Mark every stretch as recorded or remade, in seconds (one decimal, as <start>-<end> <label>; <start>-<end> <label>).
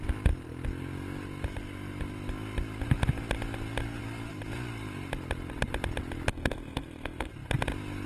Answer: 0.0-6.3 recorded; 6.3-7.3 remade; 7.3-8.1 recorded